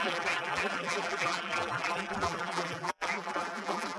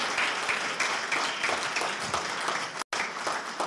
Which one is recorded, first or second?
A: second